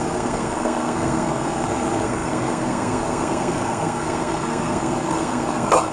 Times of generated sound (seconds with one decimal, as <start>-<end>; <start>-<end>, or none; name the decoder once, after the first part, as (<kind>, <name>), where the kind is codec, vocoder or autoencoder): 0.0-5.9 (codec, SNAC)